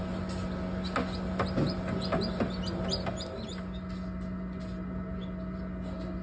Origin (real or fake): real